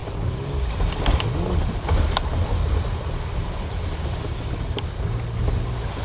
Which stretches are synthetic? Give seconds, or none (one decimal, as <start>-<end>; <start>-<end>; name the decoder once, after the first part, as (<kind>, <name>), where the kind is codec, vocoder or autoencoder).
none